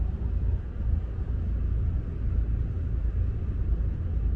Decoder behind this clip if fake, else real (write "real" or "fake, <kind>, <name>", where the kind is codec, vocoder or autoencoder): real